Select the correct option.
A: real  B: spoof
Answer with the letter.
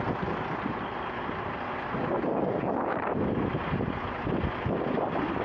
A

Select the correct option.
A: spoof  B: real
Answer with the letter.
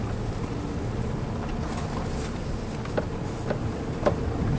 B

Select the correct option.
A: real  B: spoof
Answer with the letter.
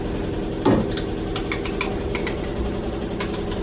A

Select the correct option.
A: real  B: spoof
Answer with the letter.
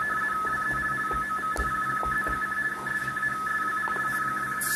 A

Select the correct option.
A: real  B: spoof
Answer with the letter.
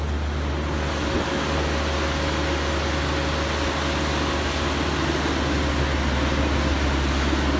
A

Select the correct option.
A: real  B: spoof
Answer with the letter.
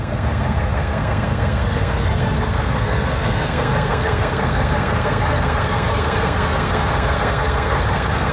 B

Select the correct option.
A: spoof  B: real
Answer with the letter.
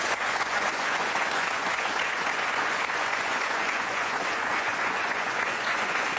A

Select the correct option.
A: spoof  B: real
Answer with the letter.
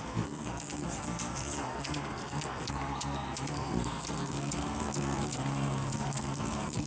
A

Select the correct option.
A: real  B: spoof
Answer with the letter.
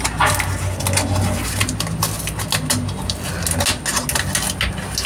A